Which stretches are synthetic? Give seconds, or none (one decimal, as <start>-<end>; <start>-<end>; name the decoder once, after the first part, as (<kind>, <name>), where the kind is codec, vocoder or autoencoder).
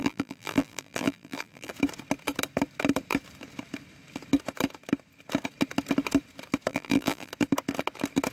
0.0-1.7 (vocoder, BigVGAN v2); 6.7-7.3